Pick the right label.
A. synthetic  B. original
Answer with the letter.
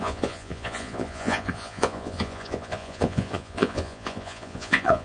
A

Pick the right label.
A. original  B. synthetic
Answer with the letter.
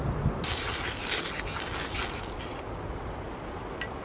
A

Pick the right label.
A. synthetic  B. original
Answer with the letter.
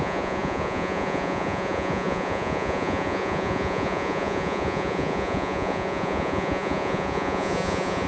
A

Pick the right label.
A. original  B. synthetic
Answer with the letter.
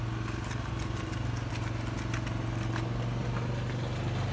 A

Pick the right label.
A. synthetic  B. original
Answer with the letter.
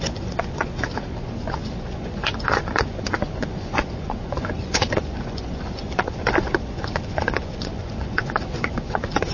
A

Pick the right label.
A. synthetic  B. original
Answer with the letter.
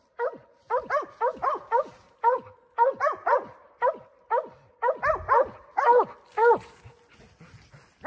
B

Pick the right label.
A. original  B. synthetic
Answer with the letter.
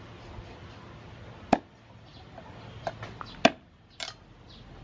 A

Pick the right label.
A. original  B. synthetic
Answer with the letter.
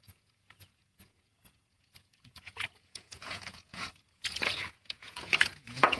B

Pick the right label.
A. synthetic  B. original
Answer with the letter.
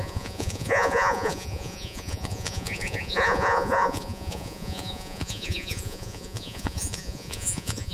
A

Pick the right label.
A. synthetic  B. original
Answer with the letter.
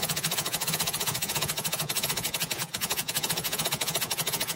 A